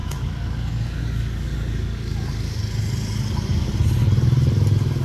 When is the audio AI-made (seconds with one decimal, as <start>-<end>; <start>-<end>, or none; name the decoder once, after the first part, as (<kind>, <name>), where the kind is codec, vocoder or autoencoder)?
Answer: 0.0-2.6 (codec, DAC); 3.3-3.7